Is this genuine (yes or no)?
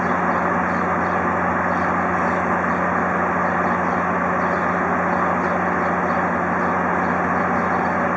yes